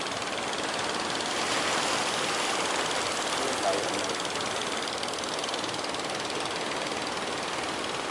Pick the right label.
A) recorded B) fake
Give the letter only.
A